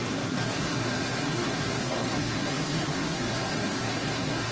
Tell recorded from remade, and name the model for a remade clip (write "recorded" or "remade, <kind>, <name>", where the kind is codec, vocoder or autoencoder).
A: remade, codec, SNAC